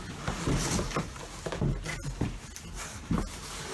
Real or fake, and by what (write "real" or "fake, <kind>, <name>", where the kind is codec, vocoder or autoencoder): real